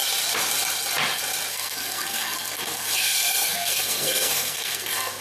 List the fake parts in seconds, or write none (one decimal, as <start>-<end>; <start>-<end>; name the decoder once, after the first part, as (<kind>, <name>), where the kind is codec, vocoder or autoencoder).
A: 1.5-5.2 (codec, SNAC)